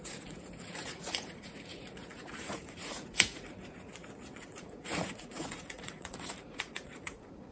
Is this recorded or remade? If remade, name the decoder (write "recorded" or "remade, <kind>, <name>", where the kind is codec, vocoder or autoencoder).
remade, vocoder, Vocos